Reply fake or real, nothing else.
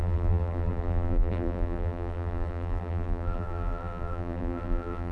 fake